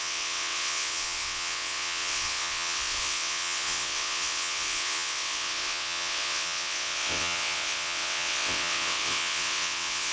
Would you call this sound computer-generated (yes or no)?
yes